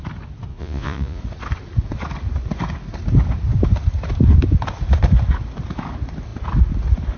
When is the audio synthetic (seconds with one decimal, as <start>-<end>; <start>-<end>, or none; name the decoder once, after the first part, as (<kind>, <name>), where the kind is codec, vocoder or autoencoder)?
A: 0.5-1.2 (vocoder, Vocos)